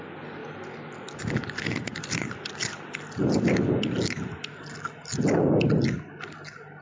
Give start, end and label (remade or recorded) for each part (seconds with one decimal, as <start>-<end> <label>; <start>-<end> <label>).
0.0-6.8 recorded